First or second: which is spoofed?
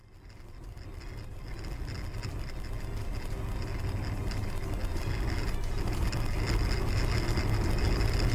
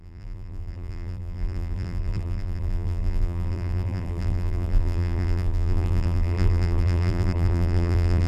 second